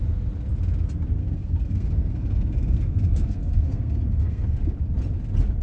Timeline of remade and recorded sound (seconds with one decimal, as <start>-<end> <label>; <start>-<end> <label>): 0.0-1.2 recorded; 1.2-4.6 remade; 4.6-5.6 recorded

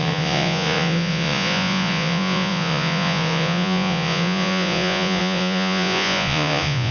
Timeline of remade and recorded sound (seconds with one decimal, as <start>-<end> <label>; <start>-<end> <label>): 0.0-6.9 remade

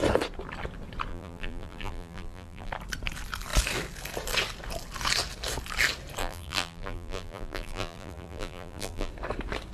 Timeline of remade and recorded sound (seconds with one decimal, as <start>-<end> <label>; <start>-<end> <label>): 0.0-1.1 recorded; 1.1-2.7 remade; 2.7-6.2 recorded; 6.2-9.1 remade; 9.1-9.7 recorded

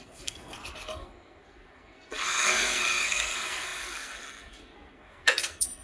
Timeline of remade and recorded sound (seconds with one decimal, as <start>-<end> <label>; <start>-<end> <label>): 0.0-5.8 remade

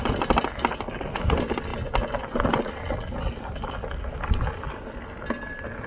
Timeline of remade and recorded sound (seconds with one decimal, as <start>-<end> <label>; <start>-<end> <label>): 0.0-5.9 recorded